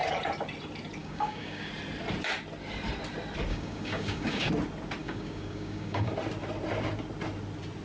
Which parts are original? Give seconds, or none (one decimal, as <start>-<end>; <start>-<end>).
0.0-1.0; 1.7-3.5; 4.5-5.0; 6.1-7.8